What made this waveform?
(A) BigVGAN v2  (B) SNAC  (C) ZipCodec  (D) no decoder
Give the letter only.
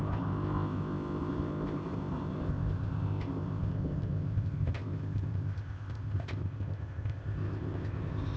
C